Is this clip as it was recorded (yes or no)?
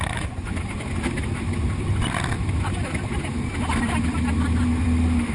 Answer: yes